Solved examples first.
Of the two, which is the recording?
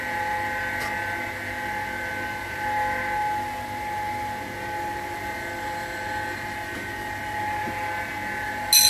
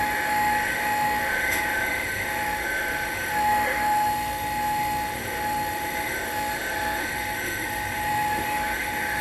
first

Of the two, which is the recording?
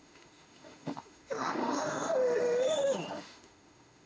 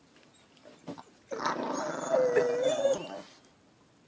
second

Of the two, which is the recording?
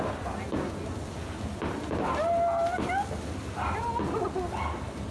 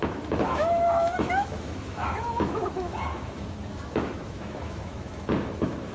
first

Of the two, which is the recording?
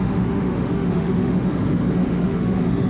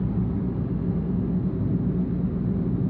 second